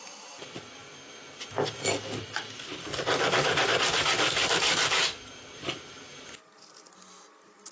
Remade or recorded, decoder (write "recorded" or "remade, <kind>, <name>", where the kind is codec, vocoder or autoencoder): recorded